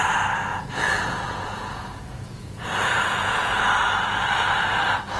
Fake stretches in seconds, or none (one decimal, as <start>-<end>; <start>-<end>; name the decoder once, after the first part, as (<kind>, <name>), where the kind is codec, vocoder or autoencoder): 0.5-3.6 (vocoder, Vocos)